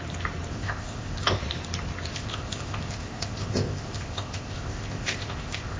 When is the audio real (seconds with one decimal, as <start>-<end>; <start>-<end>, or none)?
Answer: 0.0-0.5; 1.4-2.1